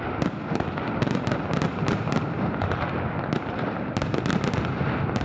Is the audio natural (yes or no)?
yes